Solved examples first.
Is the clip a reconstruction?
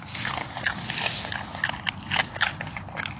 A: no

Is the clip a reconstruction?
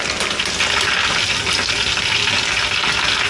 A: no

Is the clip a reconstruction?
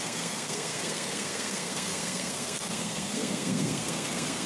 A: yes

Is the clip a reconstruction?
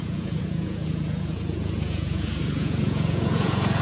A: yes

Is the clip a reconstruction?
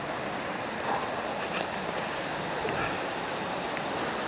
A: no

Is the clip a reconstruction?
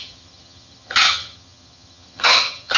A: yes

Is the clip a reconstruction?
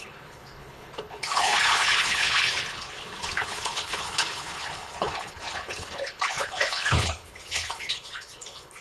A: yes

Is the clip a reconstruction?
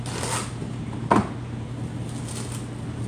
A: no